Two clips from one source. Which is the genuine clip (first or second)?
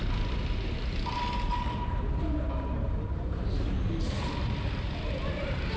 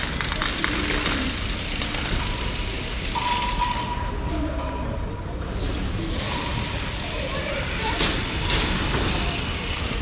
first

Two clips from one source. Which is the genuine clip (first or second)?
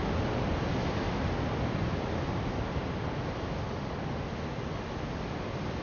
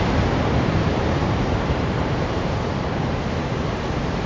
first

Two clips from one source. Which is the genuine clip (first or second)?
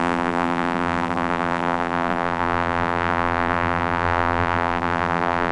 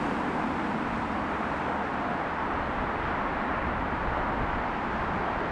second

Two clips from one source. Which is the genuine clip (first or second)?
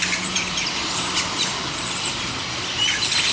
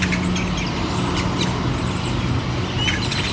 second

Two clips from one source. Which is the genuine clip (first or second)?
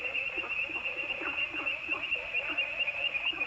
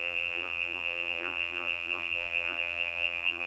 first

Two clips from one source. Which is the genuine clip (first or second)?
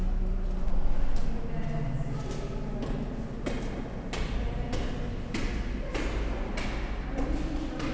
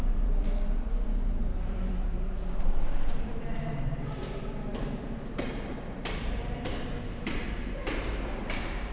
first